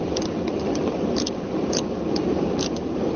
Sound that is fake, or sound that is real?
fake